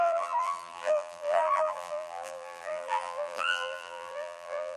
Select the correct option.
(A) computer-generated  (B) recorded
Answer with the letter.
A